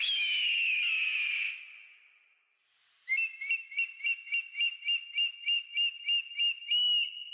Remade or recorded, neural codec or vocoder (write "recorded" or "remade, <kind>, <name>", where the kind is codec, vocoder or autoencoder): recorded